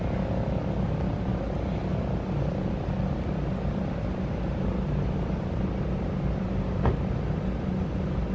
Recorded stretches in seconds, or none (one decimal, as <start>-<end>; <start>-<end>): 0.0-8.3